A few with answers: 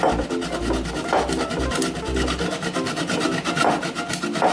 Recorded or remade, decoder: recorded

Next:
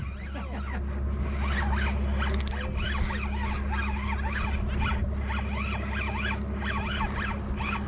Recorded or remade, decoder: recorded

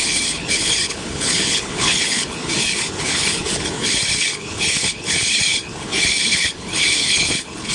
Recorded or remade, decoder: remade, codec, HILCodec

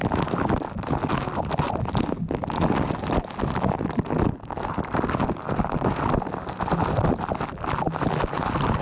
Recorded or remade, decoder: recorded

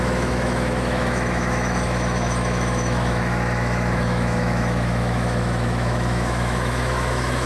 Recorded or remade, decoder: remade, autoencoder, DAC-VAE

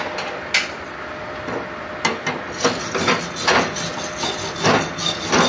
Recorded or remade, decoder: recorded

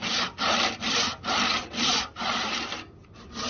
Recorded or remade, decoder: recorded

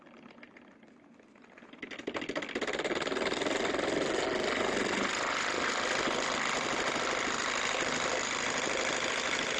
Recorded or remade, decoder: remade, vocoder, BigVGAN v2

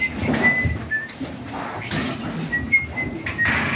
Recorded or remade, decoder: recorded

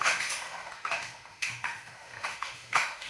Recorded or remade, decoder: remade, autoencoder, DAC-VAE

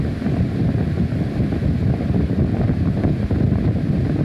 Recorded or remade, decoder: recorded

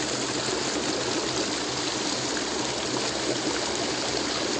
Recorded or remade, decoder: recorded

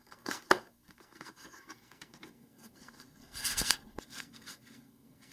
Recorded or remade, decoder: remade, codec, SNAC